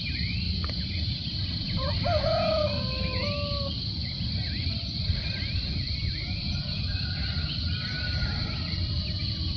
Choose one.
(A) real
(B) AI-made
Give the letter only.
A